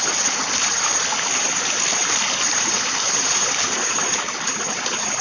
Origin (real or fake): real